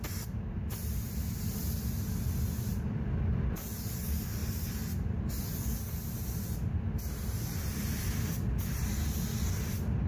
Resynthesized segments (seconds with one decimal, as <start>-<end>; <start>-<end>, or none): 0.0-1.6; 2.2-10.1